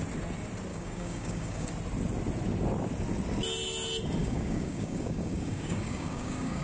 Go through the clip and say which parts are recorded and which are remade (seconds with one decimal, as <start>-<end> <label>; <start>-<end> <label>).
0.0-0.7 recorded; 0.7-1.7 remade; 1.7-4.2 recorded; 4.2-6.6 remade